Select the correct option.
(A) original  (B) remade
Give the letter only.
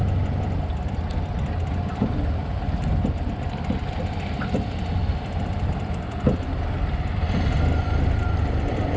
A